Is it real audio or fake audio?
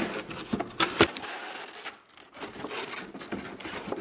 real